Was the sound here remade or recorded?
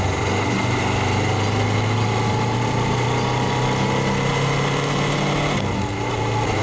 recorded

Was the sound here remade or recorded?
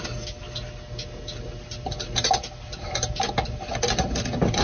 recorded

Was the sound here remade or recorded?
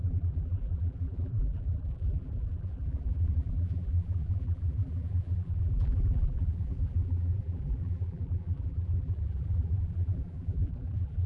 remade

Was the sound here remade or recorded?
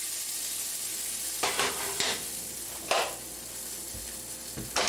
recorded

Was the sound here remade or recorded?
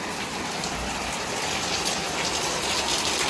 recorded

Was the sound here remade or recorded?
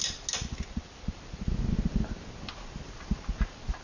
recorded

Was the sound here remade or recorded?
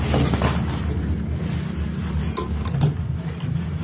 recorded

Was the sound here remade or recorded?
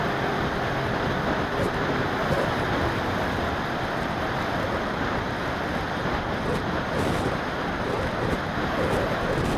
recorded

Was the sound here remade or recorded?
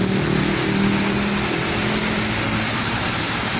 recorded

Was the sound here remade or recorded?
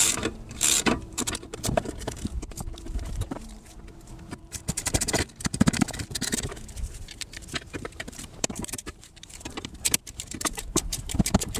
remade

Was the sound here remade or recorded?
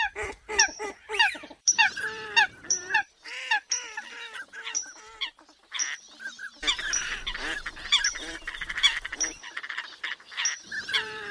remade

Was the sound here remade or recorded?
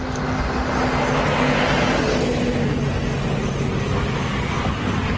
recorded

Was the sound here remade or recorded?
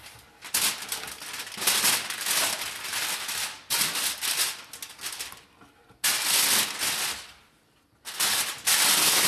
recorded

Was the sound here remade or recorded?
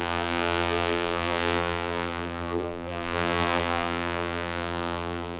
remade